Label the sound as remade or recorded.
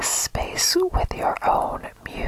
recorded